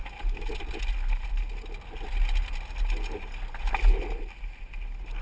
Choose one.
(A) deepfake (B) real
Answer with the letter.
B